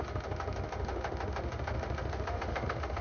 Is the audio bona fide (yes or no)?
no